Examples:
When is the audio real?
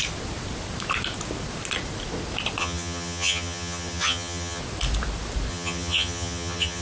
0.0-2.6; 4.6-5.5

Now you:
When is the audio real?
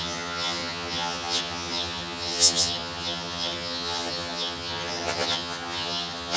none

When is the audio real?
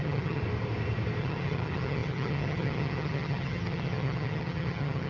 0.4-1.2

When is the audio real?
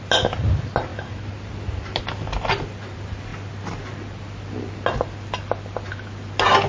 0.0-6.7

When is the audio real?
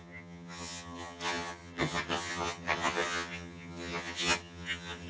none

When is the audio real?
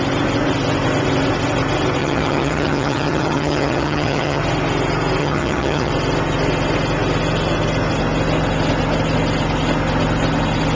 0.0-2.0; 4.4-5.2; 5.9-10.8